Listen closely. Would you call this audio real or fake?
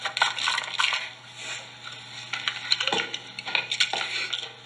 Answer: real